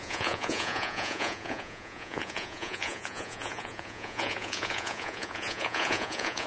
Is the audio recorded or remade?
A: remade